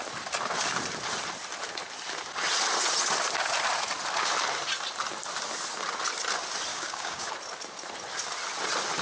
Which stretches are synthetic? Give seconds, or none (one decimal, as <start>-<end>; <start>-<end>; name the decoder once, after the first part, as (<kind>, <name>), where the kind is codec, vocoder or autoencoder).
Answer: 6.7-7.3 (codec, DAC)

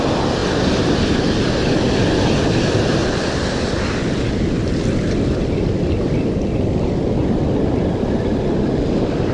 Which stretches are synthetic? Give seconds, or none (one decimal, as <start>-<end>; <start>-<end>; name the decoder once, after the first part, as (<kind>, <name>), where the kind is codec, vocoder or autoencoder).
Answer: 0.4-1.0 (vocoder, BigVGAN v2); 3.0-4.0; 7.2-7.8

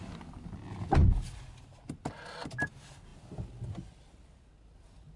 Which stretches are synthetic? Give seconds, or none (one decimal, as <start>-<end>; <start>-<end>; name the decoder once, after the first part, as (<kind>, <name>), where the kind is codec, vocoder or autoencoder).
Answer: none

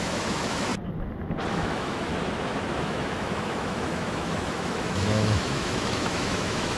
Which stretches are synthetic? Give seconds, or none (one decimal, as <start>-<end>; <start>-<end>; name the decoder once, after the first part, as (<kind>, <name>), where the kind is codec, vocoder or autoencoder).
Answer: 0.0-0.7 (autoencoder, DAC-VAE); 1.5-2.1; 2.8-6.8

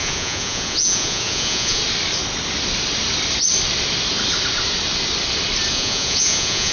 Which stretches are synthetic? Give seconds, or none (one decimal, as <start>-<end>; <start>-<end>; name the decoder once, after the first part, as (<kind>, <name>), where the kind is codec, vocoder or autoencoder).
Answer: 0.0-1.8 (vocoder, Vocos); 5.7-6.7

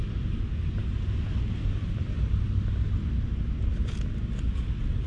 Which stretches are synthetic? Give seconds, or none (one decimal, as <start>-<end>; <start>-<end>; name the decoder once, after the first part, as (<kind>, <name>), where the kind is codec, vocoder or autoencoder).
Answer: none